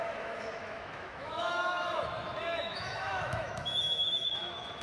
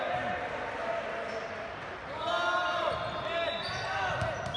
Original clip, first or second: second